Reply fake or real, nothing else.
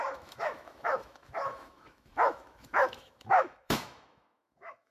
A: fake